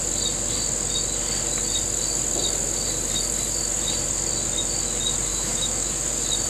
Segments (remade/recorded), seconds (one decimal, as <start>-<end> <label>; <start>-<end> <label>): 0.0-5.3 recorded; 5.3-5.9 remade; 5.9-6.5 recorded